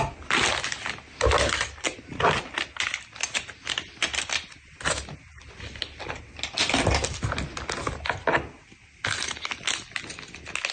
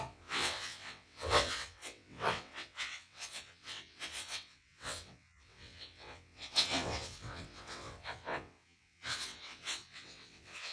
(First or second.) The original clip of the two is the first